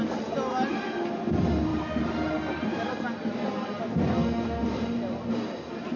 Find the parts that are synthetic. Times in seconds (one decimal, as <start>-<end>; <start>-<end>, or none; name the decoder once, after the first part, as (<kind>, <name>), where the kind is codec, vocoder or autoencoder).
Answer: 1.7-2.9 (vocoder, BigVGAN v2); 4.6-5.3